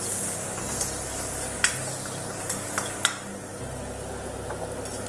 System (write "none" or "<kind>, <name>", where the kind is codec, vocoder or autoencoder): none